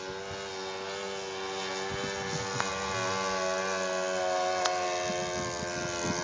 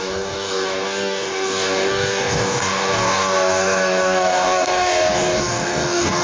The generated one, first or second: second